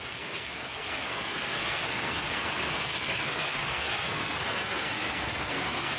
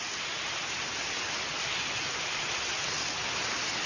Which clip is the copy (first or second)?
first